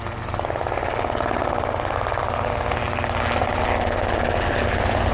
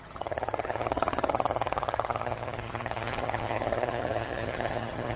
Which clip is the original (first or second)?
first